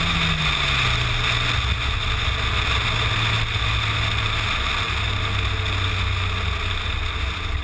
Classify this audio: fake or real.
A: real